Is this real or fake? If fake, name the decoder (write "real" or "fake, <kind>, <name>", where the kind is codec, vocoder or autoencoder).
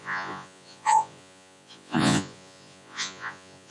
fake, vocoder, Vocos